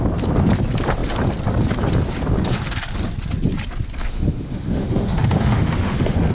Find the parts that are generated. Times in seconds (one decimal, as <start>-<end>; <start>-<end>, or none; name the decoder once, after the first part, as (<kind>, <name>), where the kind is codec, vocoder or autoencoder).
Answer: 4.0-6.3 (autoencoder, DAC-VAE)